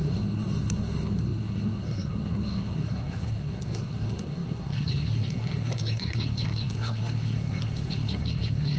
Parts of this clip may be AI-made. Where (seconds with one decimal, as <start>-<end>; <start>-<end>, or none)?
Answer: 0.0-8.8